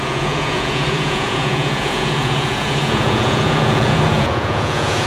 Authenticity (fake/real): fake